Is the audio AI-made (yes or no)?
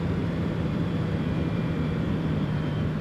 yes